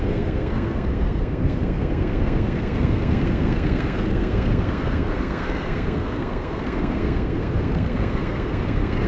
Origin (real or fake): fake